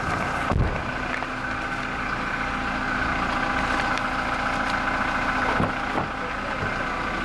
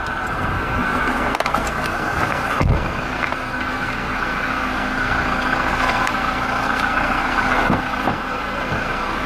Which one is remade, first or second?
second